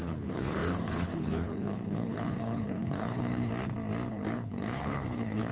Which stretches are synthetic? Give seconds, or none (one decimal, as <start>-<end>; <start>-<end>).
0.0-3.5; 4.1-5.5